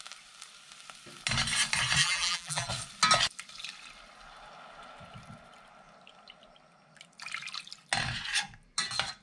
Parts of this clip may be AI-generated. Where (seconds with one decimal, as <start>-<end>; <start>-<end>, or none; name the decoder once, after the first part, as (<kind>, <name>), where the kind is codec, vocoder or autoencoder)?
2.0-2.7 (vocoder, BigVGAN v2)